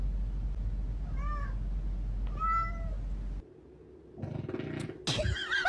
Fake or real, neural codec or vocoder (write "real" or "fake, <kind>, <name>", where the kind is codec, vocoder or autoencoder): real